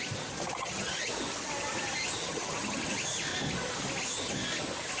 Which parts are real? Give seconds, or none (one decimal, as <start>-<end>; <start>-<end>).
0.0-0.6; 1.1-2.2; 2.9-5.0

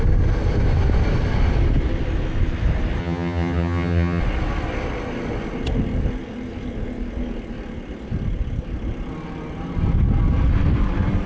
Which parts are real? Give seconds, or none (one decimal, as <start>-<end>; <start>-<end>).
0.0-3.0; 4.2-11.3

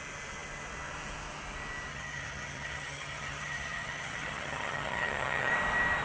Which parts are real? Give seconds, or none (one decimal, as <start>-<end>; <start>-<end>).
0.0-1.9; 5.5-6.0

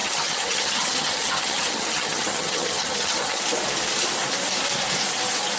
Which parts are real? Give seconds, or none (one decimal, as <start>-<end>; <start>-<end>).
3.4-5.6